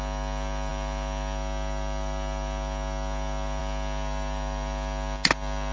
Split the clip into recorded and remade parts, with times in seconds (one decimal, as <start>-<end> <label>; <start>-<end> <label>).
0.0-5.7 recorded